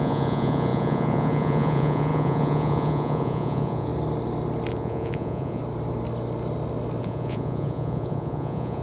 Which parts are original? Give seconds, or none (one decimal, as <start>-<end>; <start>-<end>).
3.9-4.7; 5.6-7.0